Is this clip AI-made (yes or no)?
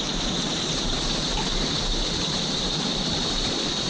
yes